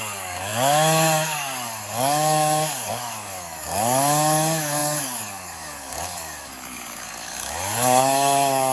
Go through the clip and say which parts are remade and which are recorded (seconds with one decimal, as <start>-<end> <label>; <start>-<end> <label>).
0.0-8.7 remade